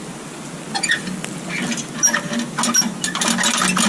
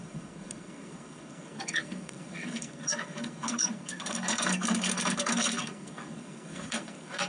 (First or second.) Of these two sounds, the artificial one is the second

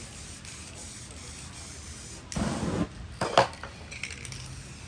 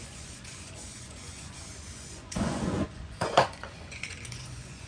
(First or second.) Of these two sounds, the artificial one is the second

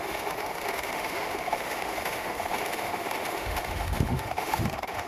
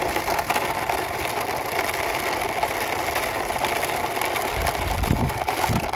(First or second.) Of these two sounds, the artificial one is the first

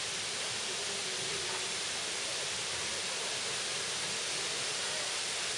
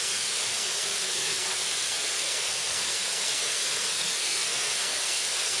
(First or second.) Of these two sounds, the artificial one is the second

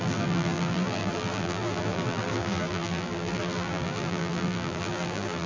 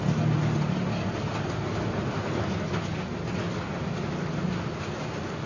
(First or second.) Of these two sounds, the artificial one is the first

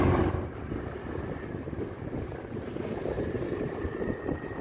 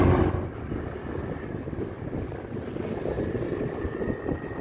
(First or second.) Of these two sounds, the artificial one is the first